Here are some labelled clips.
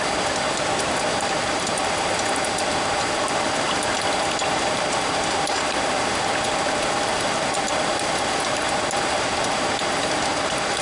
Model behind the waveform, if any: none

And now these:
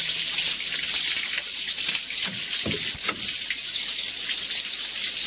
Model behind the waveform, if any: none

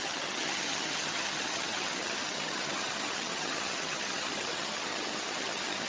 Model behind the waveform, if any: vocoder, HiFi-GAN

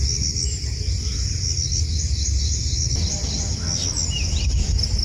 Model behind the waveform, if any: none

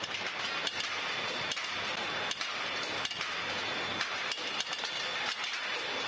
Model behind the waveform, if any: none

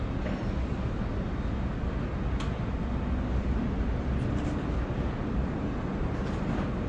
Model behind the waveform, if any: none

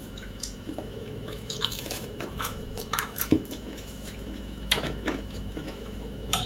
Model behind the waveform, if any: autoencoder, DAC-VAE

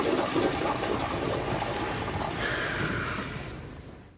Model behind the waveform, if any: vocoder, BigVGAN v2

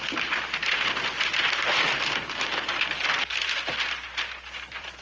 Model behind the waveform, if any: vocoder, BigVGAN v2